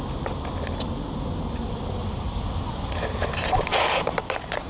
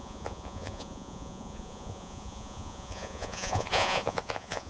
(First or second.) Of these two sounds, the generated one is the second